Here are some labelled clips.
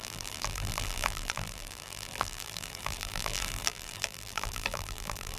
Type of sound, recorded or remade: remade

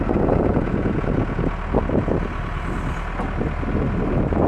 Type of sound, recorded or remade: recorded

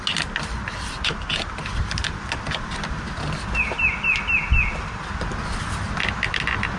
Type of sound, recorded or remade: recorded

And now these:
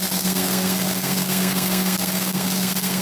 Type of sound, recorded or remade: remade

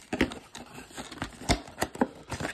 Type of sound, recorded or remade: recorded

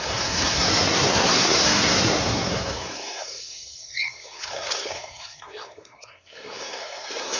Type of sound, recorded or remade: remade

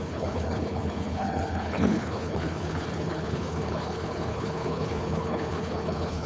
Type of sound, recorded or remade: remade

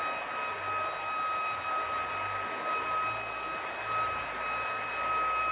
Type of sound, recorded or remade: recorded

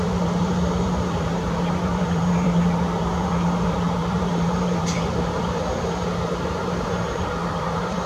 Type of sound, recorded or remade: remade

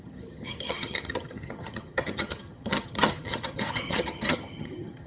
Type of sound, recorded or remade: remade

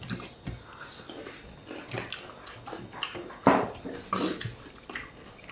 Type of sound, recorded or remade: recorded